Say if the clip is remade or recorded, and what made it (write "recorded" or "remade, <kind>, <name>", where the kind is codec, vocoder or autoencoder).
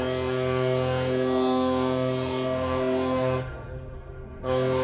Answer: remade, autoencoder, DAC-VAE